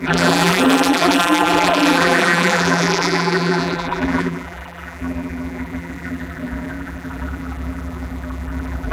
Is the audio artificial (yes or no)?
yes